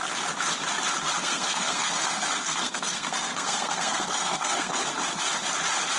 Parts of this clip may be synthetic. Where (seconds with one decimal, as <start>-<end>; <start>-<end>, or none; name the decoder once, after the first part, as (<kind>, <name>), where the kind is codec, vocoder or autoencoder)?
1.2-4.8 (codec, SNAC)

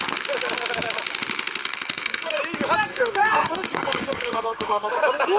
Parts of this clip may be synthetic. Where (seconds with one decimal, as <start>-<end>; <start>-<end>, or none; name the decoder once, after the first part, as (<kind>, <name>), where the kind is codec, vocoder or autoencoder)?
1.6-2.4 (codec, SNAC); 2.9-4.9

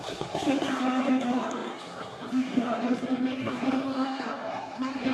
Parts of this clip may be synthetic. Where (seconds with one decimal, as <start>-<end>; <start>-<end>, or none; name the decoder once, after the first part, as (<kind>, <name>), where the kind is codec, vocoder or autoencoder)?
0.0-5.1 (codec, SNAC)

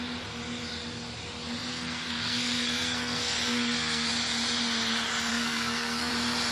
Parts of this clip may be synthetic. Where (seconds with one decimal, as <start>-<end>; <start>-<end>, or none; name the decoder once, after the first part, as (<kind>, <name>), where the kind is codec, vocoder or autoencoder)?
1.7-4.1 (codec, SNAC); 5.3-6.1

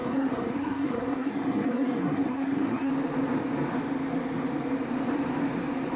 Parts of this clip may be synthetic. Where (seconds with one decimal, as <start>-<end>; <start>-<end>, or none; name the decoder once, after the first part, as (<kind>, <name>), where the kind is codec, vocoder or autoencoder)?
0.0-2.9 (codec, SNAC)

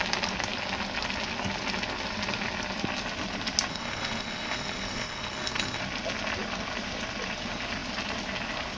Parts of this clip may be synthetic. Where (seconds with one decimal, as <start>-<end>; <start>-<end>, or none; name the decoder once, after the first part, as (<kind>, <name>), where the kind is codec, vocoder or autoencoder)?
3.7-5.8 (codec, SNAC)

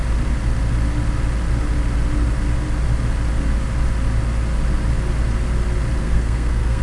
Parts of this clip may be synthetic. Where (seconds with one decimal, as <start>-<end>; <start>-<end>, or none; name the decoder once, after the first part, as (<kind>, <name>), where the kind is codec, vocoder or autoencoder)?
6.0-6.8 (codec, SNAC)

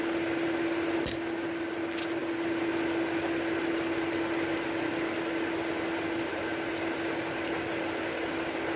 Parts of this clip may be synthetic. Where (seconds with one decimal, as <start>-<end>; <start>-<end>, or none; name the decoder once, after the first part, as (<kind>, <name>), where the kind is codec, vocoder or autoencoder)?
none